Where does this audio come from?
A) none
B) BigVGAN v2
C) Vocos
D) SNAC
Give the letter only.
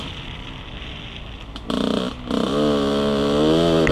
A